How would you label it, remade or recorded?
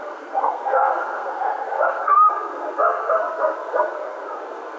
remade